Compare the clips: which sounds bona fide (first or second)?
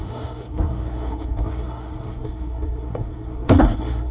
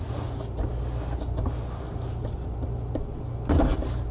second